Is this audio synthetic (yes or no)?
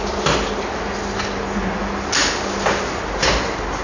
no